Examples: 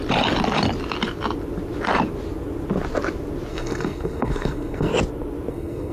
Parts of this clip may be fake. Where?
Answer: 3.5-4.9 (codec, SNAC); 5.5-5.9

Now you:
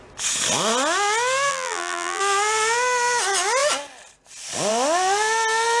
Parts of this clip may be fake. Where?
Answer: 1.5-2.2 (vocoder, BigVGAN v2)

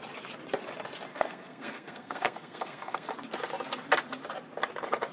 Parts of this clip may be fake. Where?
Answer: 1.1-3.1 (codec, SNAC)

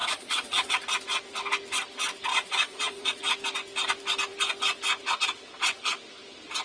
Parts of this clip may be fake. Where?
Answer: 0.0-0.7 (vocoder, Vocos); 2.3-3.2

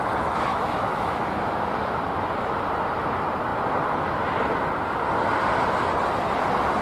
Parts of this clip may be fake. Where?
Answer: 0.5-1.6 (autoencoder, DAC-VAE)

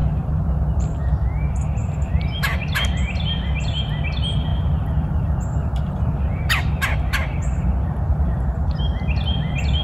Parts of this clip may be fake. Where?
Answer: 0.0-1.0 (vocoder, BigVGAN v2); 1.8-2.5; 4.5-6.3

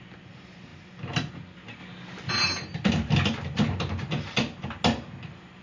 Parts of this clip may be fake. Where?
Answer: none

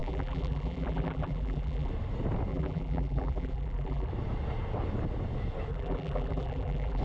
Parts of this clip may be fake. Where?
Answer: 0.0-1.9 (vocoder, BigVGAN v2); 2.5-4.1; 5.7-7.0